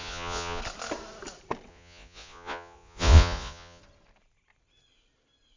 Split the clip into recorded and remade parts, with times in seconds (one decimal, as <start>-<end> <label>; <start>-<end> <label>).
0.0-0.6 remade; 0.6-1.7 recorded; 1.7-3.8 remade; 3.8-5.6 recorded